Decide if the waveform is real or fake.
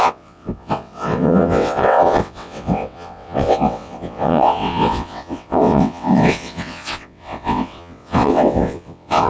fake